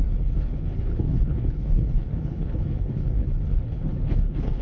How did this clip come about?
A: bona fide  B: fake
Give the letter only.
B